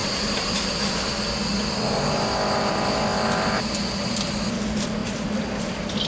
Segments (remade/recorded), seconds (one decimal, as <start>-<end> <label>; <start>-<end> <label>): 0.0-1.1 remade; 1.1-6.1 recorded